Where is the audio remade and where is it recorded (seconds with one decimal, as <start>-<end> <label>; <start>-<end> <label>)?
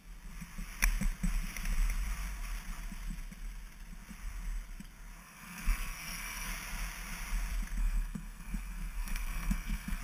0.0-5.2 recorded; 5.2-6.5 remade; 6.5-7.8 recorded; 7.8-10.0 remade